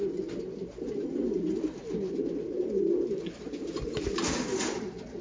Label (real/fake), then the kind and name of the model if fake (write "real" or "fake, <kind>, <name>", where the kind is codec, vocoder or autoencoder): real